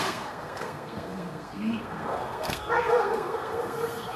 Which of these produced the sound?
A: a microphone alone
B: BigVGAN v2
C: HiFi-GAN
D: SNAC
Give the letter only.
D